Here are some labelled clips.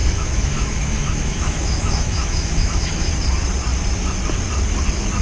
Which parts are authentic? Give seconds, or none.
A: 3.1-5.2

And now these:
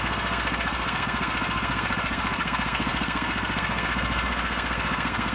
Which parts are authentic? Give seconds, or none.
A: none

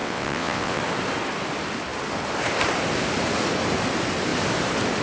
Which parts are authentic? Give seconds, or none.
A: 0.8-5.0